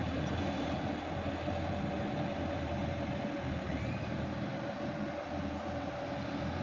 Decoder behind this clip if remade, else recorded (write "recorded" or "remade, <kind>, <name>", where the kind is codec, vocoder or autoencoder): remade, vocoder, BigVGAN v2